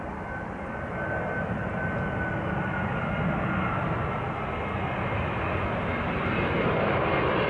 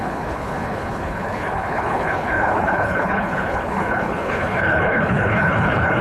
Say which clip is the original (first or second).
first